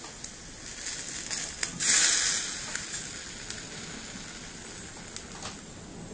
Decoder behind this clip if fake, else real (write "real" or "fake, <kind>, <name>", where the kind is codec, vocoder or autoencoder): real